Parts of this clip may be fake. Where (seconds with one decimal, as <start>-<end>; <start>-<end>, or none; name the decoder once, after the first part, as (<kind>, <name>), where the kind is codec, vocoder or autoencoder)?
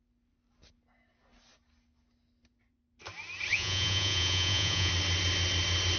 3.5-4.9 (vocoder, Vocos)